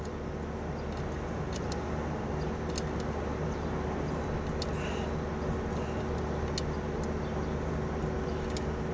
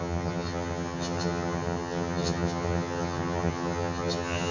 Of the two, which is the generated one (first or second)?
second